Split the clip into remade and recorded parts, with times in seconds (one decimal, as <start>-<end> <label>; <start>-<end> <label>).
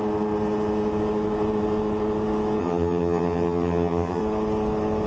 0.0-2.6 recorded; 2.6-4.2 remade; 4.2-5.1 recorded